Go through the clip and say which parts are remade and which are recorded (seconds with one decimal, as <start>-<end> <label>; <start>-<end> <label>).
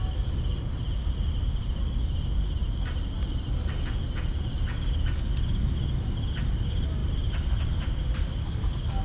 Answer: 0.0-9.0 recorded